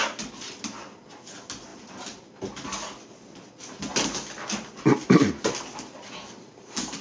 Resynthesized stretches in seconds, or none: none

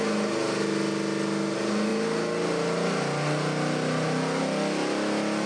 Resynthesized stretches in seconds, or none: none

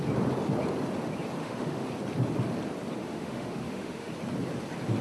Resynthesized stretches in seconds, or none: 1.4-1.9 (autoencoder, DAC-VAE); 3.0-4.1

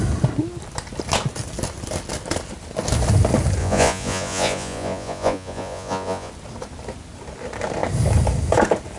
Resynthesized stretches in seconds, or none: 3.6-6.3 (vocoder, Vocos)